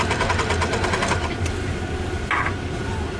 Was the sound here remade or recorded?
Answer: recorded